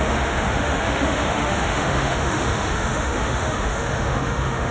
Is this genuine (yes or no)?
no